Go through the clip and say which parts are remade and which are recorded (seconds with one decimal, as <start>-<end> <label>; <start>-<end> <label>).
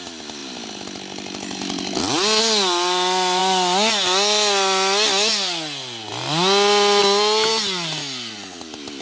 0.0-9.0 recorded